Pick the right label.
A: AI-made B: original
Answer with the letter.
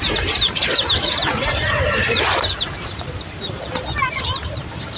A